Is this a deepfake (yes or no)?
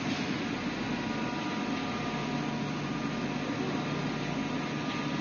no